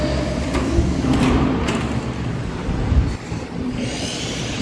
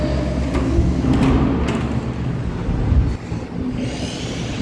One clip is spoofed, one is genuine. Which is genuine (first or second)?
second